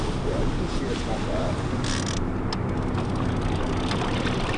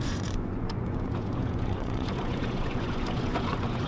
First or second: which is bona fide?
first